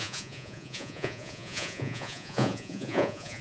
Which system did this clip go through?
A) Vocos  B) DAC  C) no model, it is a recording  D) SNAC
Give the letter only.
A